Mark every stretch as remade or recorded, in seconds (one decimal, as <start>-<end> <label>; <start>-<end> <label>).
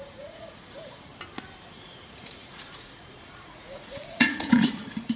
0.0-1.1 remade; 1.1-1.7 recorded; 1.7-5.2 remade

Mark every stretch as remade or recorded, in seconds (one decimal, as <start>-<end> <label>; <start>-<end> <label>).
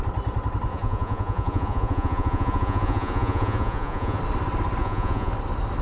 0.0-0.7 recorded; 0.7-4.2 remade; 4.2-4.8 recorded; 4.8-5.3 remade; 5.3-5.8 recorded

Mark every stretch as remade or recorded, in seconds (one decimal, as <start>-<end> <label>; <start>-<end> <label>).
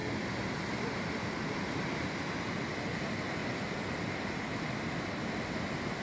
0.0-6.0 recorded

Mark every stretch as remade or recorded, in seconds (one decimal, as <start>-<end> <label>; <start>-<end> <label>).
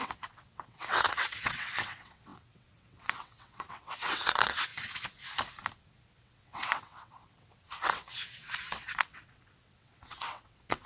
0.0-4.7 remade; 4.7-6.2 recorded; 6.2-10.9 remade